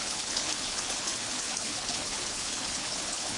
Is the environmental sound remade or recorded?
remade